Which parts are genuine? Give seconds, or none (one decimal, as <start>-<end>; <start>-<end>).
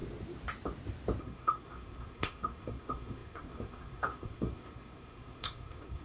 0.0-1.2